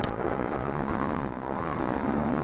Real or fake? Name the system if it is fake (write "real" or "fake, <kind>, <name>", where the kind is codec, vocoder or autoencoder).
fake, vocoder, Vocos